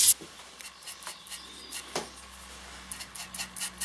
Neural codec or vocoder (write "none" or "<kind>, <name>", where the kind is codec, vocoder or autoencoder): none